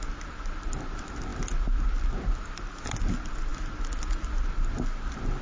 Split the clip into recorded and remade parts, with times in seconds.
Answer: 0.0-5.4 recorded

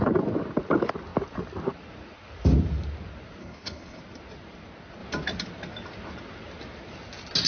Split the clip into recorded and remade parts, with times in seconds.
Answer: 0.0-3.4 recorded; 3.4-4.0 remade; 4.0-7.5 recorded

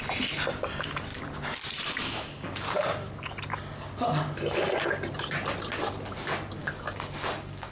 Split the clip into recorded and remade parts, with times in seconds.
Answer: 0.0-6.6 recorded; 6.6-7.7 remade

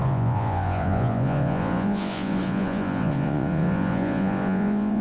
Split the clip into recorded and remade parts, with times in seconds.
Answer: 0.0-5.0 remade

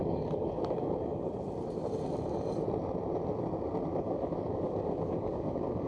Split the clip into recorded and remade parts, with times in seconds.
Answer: 0.0-1.3 remade; 1.3-3.9 recorded; 3.9-5.9 remade